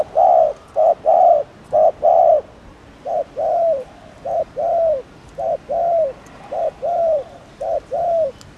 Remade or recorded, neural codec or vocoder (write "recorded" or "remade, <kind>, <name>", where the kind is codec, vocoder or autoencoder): remade, vocoder, BigVGAN v2